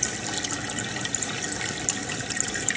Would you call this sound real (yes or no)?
yes